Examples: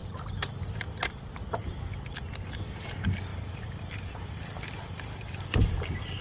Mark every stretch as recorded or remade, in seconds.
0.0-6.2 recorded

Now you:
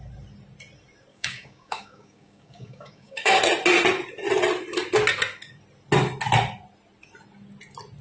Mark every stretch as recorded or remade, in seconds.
0.0-1.1 recorded; 1.1-3.4 remade; 3.4-8.0 recorded

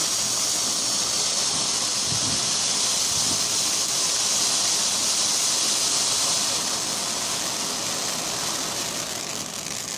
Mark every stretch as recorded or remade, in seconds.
0.0-10.0 recorded

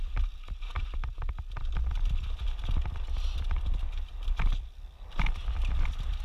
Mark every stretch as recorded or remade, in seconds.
0.0-6.2 recorded

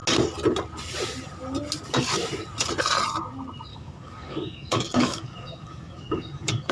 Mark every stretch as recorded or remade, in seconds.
0.0-3.7 recorded; 3.7-6.7 remade

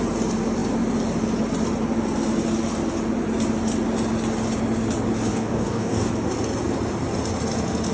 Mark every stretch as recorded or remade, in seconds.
0.0-5.3 recorded; 5.3-6.1 remade; 6.1-7.9 recorded